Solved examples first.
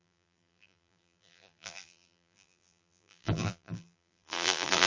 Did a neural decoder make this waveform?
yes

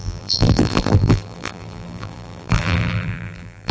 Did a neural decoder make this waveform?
yes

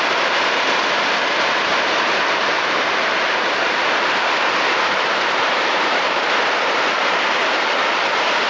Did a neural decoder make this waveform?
yes